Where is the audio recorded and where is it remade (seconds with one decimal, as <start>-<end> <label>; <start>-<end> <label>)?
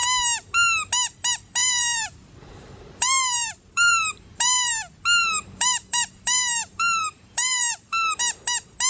0.0-1.6 recorded; 1.6-4.7 remade; 4.7-5.2 recorded; 5.2-8.2 remade; 8.2-8.9 recorded